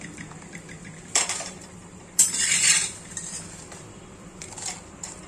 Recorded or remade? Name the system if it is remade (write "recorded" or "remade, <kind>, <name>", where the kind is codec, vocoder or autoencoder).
remade, vocoder, BigVGAN v2